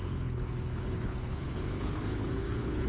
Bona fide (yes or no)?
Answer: no